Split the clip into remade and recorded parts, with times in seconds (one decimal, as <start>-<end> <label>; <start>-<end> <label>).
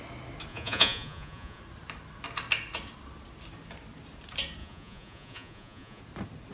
0.0-0.5 recorded; 0.5-1.6 remade; 1.6-4.6 recorded; 4.6-6.0 remade; 6.0-6.5 recorded